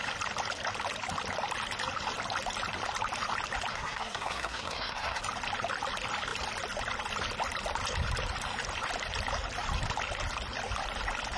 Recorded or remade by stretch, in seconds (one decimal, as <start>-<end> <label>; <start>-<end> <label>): 0.0-3.7 recorded; 3.7-5.2 remade; 5.2-11.4 recorded